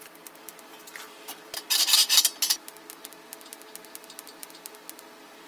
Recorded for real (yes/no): yes